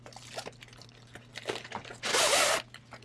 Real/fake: real